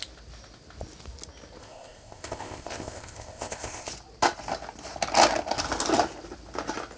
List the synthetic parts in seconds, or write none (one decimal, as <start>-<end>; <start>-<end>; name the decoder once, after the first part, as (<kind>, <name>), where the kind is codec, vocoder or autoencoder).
1.6-3.9 (codec, ZipCodec)